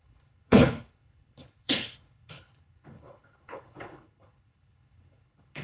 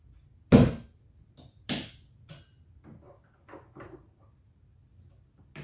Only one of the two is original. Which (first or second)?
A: second